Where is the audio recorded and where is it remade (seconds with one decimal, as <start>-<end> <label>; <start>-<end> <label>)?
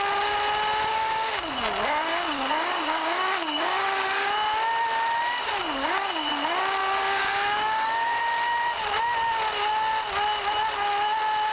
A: 0.0-0.9 recorded; 0.9-1.5 remade; 1.5-2.1 recorded; 2.1-4.3 remade; 4.3-5.6 recorded; 5.6-6.3 remade; 6.3-6.8 recorded; 6.8-8.2 remade; 8.2-11.5 recorded